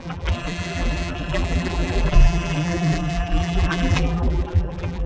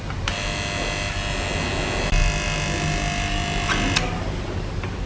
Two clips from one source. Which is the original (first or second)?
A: second